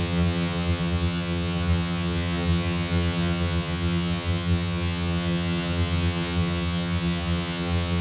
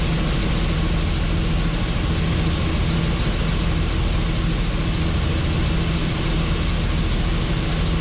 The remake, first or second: first